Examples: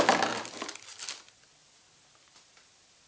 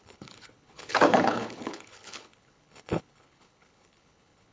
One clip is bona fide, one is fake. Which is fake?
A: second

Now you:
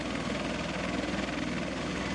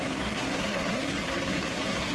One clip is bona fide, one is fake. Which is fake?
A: second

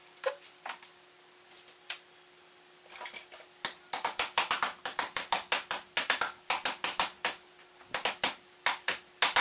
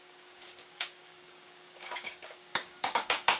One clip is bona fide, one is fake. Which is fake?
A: second